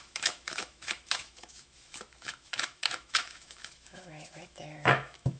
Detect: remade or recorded remade